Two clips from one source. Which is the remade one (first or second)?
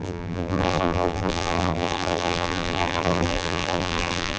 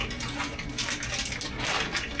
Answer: first